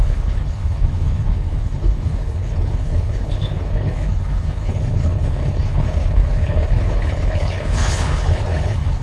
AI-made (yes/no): yes